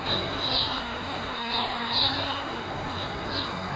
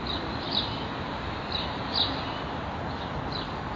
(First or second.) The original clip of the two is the second